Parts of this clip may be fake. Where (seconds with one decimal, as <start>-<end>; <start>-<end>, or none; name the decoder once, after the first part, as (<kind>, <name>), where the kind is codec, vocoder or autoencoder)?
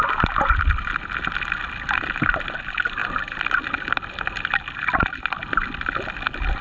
none